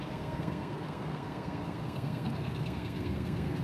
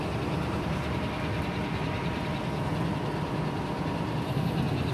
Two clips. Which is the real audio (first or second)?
second